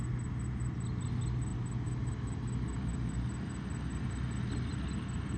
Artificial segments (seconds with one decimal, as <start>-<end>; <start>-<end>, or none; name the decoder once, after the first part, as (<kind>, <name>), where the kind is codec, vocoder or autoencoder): none